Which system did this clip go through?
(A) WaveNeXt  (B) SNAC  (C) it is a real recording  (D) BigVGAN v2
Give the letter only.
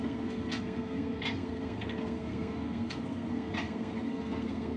B